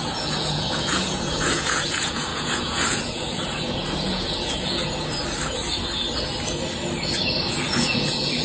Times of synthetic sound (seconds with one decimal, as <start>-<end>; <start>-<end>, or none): 0.0-4.8; 7.5-8.4